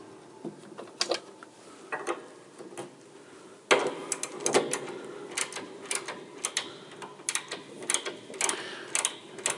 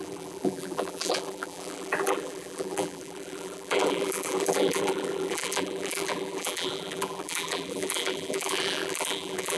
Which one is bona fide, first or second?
first